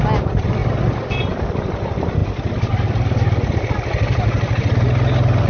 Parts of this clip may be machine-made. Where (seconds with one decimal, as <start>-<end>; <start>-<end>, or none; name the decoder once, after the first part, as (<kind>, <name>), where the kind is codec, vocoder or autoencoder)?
none